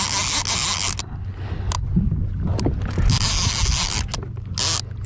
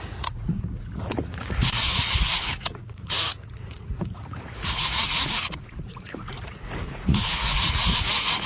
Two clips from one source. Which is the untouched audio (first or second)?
first